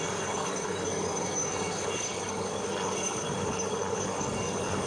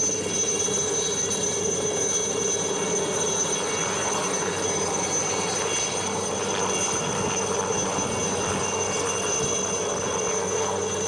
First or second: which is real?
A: second